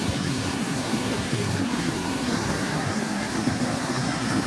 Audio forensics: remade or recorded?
remade